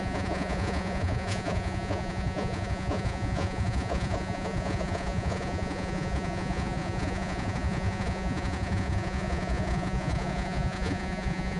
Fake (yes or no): yes